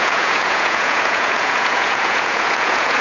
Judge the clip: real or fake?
fake